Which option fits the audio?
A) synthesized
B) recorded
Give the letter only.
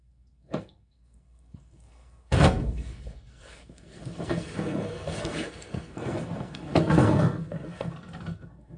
A